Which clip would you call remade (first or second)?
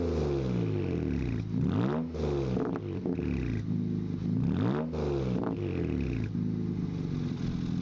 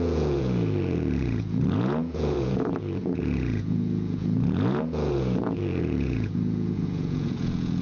second